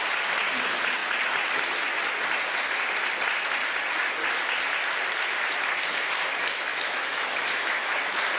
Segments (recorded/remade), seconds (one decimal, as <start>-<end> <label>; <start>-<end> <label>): 0.0-6.7 recorded; 6.7-8.0 remade; 8.0-8.4 recorded